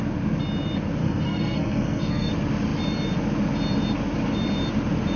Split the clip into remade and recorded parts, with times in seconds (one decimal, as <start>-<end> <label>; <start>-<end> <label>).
0.0-1.0 recorded; 1.0-2.3 remade; 2.3-5.2 recorded